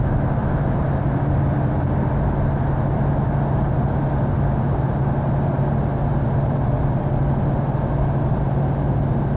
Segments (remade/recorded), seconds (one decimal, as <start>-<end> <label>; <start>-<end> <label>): 0.0-0.4 recorded; 0.4-1.0 remade; 1.0-9.4 recorded